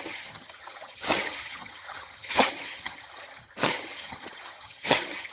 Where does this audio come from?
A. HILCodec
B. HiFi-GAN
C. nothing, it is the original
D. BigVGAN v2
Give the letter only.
B